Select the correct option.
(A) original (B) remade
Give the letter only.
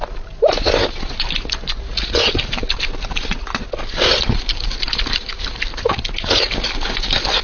A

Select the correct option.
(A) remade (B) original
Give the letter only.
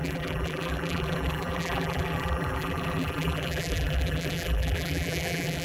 A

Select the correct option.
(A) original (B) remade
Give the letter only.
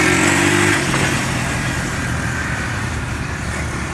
B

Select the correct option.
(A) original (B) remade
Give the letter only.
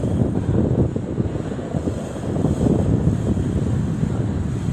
A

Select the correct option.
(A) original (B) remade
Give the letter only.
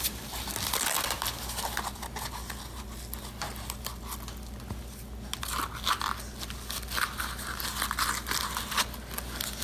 A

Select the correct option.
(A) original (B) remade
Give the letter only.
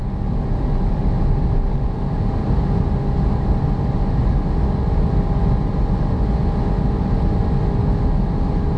A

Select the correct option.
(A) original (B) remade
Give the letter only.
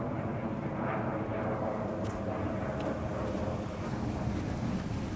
A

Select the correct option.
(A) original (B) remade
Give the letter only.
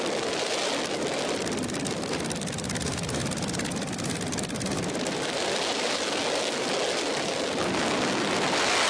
A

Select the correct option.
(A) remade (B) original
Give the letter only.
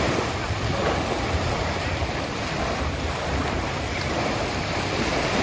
A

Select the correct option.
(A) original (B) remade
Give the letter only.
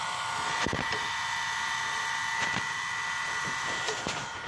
B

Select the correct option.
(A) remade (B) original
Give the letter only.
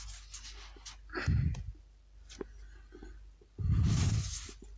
B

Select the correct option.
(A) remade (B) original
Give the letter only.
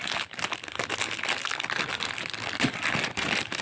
B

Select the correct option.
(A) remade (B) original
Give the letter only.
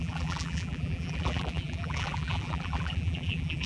A